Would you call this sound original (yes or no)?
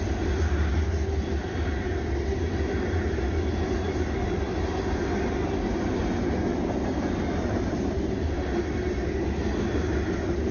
yes